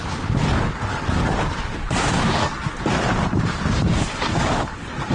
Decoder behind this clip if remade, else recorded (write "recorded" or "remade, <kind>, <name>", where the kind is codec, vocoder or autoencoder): recorded